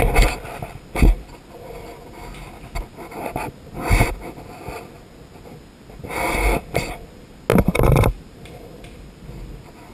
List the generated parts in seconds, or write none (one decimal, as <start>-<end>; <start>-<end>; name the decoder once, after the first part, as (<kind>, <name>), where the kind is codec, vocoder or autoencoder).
7.5-8.8 (vocoder, BigVGAN v2)